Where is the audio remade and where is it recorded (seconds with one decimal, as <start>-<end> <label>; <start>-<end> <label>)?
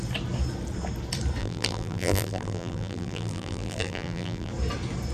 0.0-1.4 recorded; 1.4-4.5 remade; 4.5-5.1 recorded